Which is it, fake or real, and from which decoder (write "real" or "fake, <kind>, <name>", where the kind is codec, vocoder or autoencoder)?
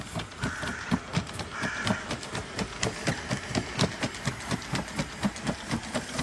real